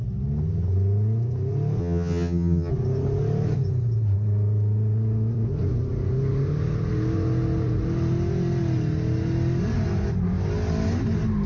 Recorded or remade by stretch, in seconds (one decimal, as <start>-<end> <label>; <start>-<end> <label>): 0.0-1.8 recorded; 1.8-2.7 remade; 2.7-11.5 recorded

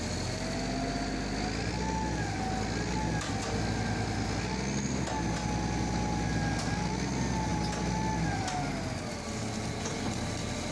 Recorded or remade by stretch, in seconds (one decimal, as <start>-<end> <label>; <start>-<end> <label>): 0.0-10.7 recorded

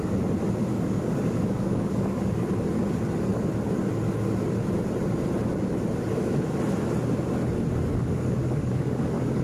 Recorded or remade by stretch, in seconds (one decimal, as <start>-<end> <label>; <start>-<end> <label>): 0.0-0.7 recorded; 0.7-2.5 remade; 2.5-8.0 recorded; 8.0-9.4 remade